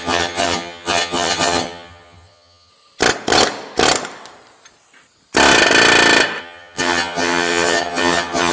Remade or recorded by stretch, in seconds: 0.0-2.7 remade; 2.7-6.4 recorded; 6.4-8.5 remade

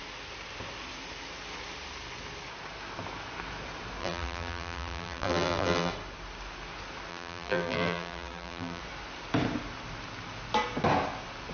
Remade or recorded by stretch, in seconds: 0.0-4.0 recorded; 4.0-5.9 remade; 5.9-7.1 recorded; 7.1-8.8 remade; 8.8-11.5 recorded

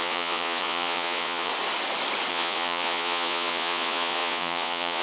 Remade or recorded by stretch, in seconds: 0.0-1.5 remade; 1.5-2.3 recorded; 2.3-5.0 remade

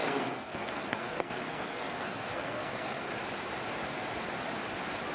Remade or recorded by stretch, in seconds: 0.0-3.1 remade; 3.1-5.1 recorded

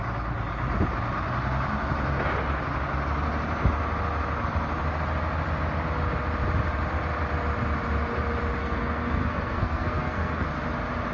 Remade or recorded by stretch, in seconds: 0.0-8.6 recorded; 8.6-10.5 remade; 10.5-11.1 recorded